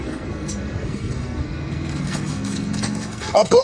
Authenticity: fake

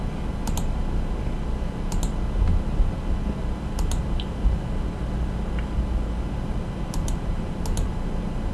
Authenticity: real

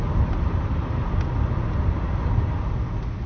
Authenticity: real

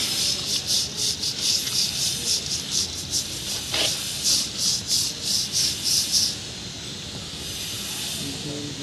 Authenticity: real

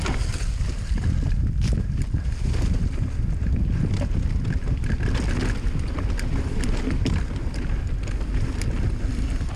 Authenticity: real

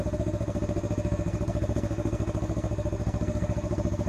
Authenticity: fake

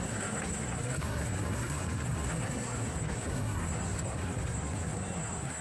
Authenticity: fake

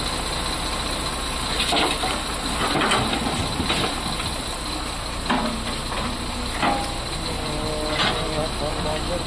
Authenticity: real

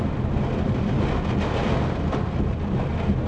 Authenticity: real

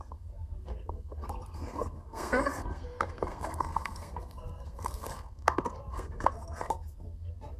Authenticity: fake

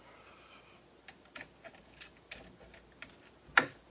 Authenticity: real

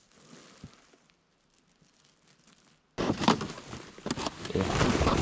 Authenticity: real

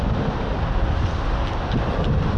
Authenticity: real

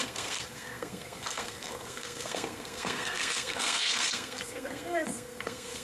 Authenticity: fake